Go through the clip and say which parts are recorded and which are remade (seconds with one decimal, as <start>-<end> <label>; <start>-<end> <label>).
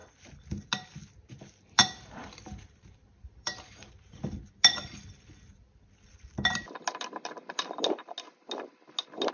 0.0-1.8 recorded; 1.8-3.9 remade; 3.9-9.3 recorded